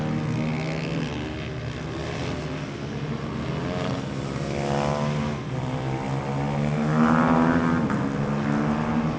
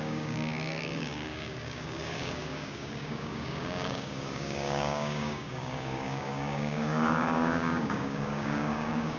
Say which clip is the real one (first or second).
first